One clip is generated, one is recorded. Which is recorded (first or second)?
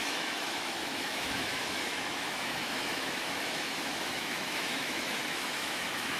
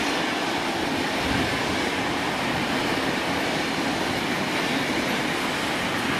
second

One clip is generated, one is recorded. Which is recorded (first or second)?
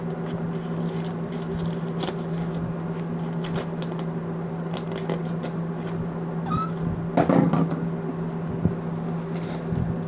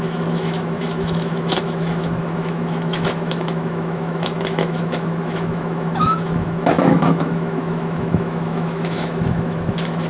first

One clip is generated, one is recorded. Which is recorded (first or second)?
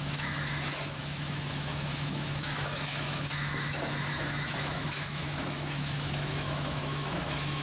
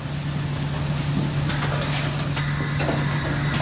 second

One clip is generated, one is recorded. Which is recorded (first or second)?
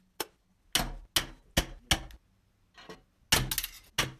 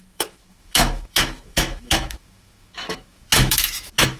first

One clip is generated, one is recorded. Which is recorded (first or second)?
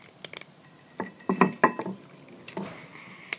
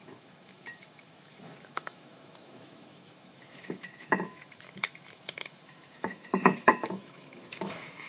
first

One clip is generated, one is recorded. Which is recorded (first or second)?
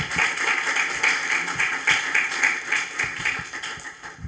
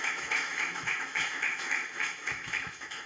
first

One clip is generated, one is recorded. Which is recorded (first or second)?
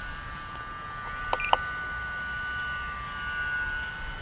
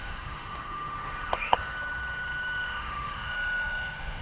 first